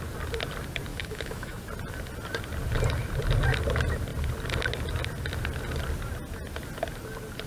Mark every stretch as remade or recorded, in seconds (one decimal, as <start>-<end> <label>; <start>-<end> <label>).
0.0-0.9 recorded; 0.9-1.6 remade; 1.6-7.5 recorded